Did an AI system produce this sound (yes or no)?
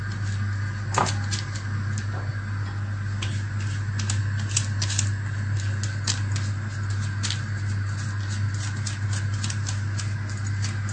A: no